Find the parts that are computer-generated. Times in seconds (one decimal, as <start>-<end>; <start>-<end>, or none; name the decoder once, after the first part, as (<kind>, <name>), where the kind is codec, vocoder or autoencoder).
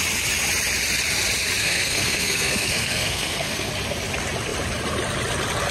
1.6-3.7 (codec, SNAC)